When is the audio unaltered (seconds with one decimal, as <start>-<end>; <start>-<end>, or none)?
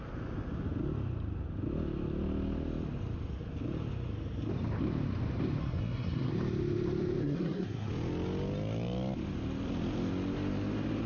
0.0-5.6; 6.3-7.2; 7.9-11.1